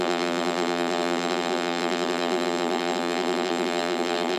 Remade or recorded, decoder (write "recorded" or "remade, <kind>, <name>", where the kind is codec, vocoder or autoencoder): remade, vocoder, BigVGAN v2